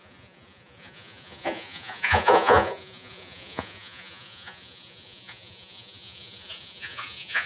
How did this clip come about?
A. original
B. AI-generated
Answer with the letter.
B